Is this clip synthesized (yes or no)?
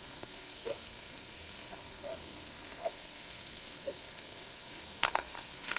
yes